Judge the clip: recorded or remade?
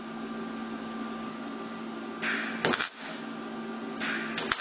recorded